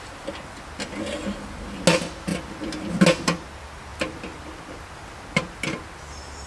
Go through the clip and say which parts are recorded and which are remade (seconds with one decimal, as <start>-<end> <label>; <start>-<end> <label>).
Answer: 0.0-6.5 recorded